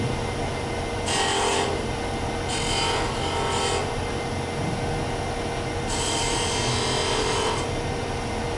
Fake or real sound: real